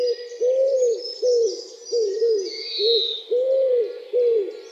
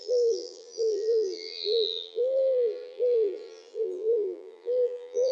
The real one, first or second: first